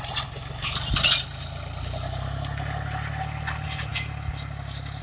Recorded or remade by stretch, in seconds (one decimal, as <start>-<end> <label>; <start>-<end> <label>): 0.0-5.0 recorded